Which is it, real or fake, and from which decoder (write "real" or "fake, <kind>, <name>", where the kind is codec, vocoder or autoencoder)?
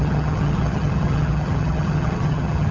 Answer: fake, vocoder, HiFi-GAN